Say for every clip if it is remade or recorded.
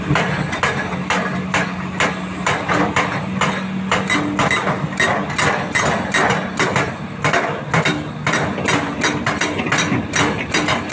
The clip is recorded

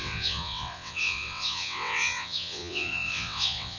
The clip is remade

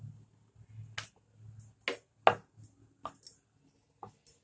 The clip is recorded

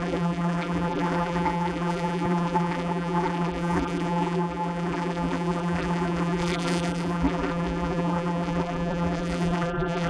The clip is remade